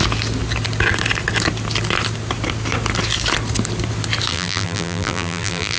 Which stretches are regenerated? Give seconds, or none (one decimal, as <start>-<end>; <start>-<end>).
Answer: 4.3-5.8